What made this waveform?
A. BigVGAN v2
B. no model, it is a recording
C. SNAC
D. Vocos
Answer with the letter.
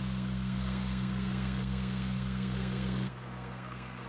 C